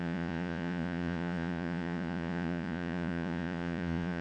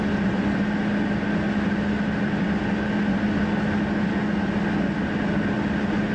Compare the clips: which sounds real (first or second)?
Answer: second